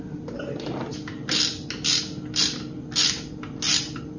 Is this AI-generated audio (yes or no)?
no